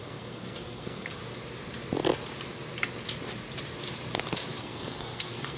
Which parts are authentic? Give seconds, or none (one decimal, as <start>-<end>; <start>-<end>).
1.2-4.6